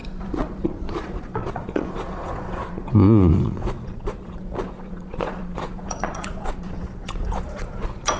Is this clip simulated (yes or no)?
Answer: yes